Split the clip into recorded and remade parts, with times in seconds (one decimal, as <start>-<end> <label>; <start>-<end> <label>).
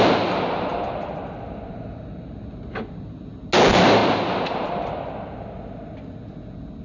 0.0-0.7 recorded; 0.7-3.1 remade; 3.1-4.0 recorded; 4.0-5.9 remade; 5.9-6.8 recorded